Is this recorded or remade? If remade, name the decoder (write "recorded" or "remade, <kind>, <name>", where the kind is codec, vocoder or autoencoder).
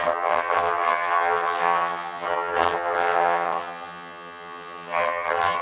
remade, vocoder, HiFi-GAN